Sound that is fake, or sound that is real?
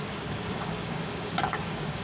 fake